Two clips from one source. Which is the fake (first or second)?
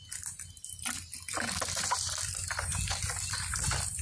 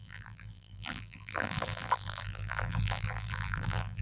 second